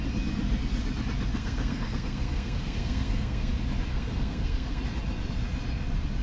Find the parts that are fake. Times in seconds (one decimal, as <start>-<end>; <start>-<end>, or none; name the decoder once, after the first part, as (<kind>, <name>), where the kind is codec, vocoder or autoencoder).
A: 1.3-3.5 (codec, SNAC); 3.9-4.8